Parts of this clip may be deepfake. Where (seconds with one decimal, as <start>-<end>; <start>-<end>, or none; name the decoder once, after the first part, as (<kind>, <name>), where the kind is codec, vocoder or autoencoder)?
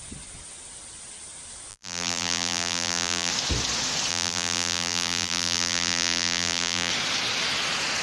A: 1.7-3.3 (vocoder, BigVGAN v2); 4.1-6.9